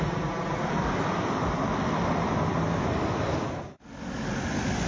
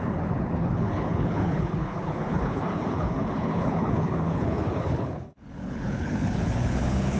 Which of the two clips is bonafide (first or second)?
first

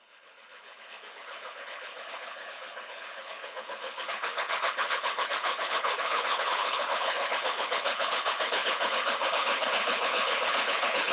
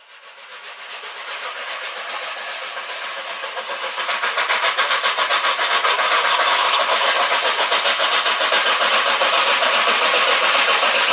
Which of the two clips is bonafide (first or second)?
second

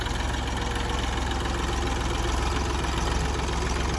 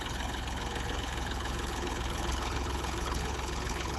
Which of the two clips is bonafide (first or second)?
first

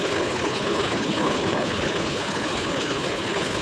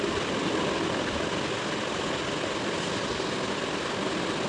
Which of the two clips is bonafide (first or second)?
second